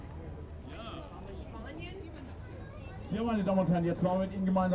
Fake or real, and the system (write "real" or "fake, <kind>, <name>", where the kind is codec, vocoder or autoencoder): real